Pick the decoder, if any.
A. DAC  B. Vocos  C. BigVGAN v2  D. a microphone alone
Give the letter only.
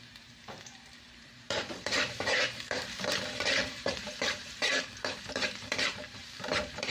C